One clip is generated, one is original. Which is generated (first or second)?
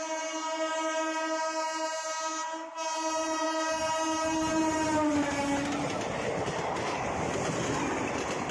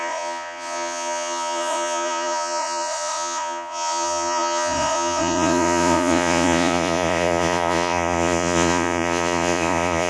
second